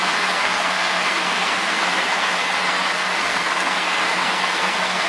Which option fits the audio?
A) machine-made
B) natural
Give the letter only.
A